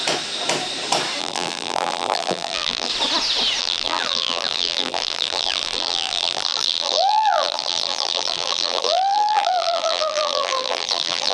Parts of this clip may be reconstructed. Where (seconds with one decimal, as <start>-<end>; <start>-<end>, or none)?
1.2-2.9; 3.6-11.3